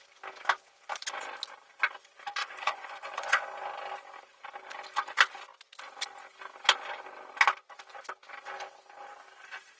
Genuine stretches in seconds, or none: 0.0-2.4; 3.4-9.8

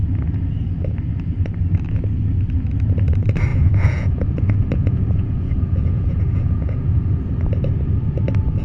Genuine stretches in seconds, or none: 0.0-3.5; 7.0-8.6

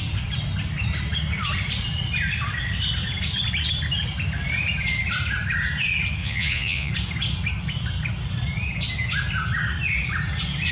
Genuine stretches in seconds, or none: 0.0-6.2; 6.9-10.7

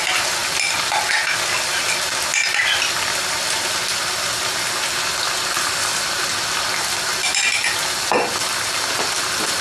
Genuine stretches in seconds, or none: 0.0-9.6

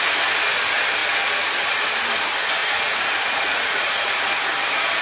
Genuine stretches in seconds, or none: 0.0-2.6; 4.2-5.0

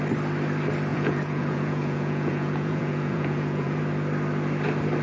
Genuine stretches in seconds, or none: 0.0-0.9; 3.8-5.0

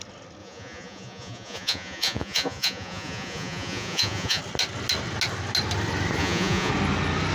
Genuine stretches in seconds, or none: 0.0-0.4; 4.4-6.2; 6.7-7.3

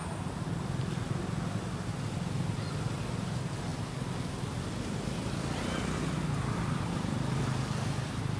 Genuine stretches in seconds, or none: 0.0-8.4